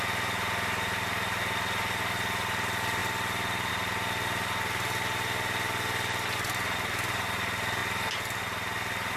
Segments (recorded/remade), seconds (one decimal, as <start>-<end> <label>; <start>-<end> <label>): 0.0-9.2 recorded